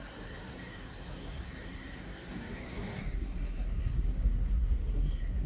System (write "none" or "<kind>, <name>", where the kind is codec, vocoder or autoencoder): codec, SNAC